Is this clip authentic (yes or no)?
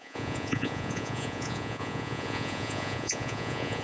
no